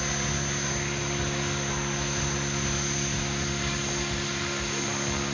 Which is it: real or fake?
real